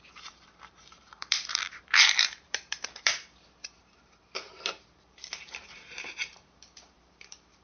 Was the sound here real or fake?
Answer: fake